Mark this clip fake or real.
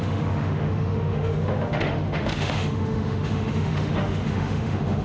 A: fake